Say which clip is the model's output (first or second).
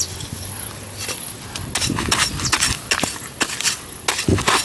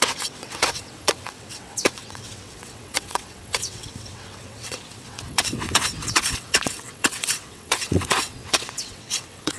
second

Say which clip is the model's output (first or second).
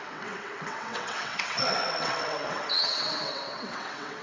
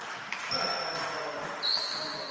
first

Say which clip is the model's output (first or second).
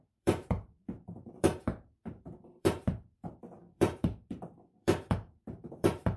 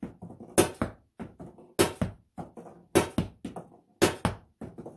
first